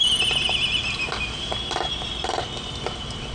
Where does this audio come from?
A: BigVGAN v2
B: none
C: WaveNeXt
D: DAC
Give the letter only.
B